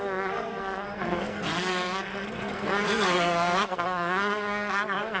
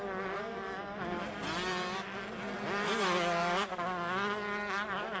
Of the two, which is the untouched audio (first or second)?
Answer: second